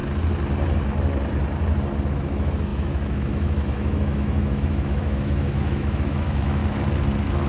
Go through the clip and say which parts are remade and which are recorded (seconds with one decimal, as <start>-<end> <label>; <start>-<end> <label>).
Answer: 0.0-2.1 recorded; 2.1-6.6 remade; 6.6-7.5 recorded